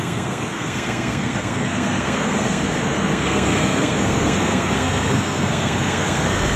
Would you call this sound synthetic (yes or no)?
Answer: yes